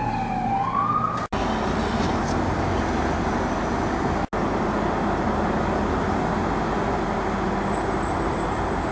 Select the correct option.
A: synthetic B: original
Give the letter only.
B